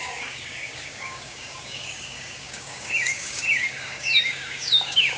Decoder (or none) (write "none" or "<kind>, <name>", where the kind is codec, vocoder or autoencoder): codec, DAC